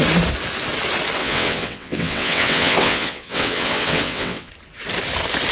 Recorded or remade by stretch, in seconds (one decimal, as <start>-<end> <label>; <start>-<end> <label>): 0.0-1.2 recorded; 1.2-4.5 remade; 4.5-5.5 recorded